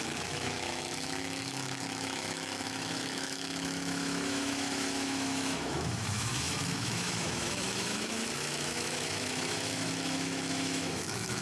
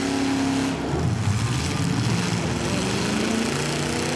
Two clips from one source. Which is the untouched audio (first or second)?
second